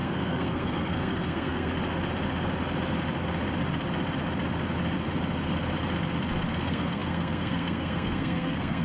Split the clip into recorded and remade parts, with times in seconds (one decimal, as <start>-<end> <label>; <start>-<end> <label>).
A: 0.0-1.7 remade; 1.7-6.5 recorded; 6.5-8.8 remade